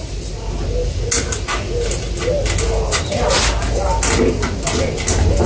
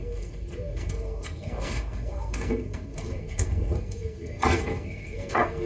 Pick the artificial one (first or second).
second